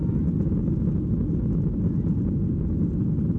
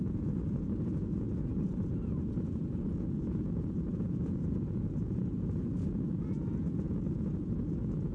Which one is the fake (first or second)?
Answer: second